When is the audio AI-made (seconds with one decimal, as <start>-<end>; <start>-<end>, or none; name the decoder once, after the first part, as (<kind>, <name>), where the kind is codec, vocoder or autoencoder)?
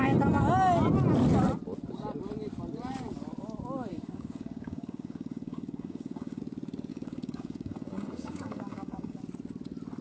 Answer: 3.9-6.4 (codec, DAC); 6.9-9.2